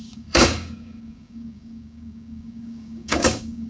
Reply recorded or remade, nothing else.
remade